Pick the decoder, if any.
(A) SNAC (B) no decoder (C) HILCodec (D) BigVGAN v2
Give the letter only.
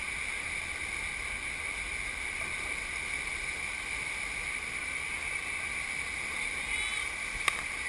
B